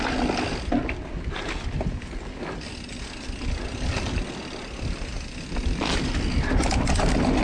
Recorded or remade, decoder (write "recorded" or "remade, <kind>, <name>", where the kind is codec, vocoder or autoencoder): recorded